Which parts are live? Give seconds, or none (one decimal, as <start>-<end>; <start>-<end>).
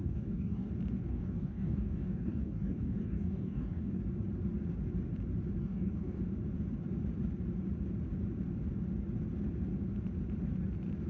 0.7-1.1; 4.0-5.6; 6.2-11.1